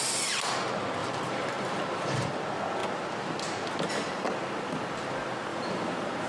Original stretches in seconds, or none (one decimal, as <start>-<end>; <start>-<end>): 0.0-1.0; 2.3-5.5